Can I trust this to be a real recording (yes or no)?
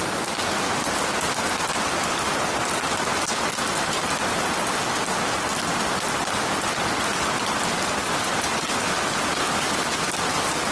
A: yes